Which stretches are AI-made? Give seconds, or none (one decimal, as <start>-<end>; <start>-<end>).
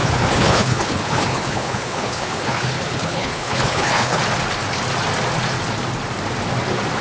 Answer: 0.0-4.2